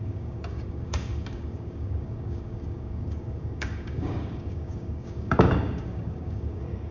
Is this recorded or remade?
remade